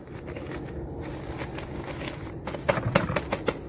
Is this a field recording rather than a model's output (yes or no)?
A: yes